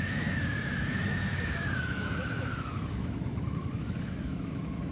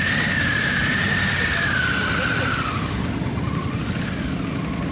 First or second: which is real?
second